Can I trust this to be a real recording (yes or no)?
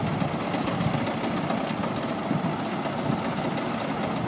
yes